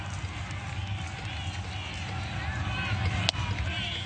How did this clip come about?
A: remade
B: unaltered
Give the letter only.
B